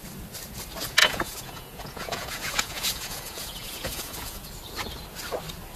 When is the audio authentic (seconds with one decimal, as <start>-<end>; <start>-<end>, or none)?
0.0-1.0; 4.5-5.8